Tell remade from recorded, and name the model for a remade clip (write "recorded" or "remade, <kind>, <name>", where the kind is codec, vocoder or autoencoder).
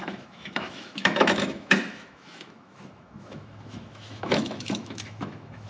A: remade, autoencoder, DAC-VAE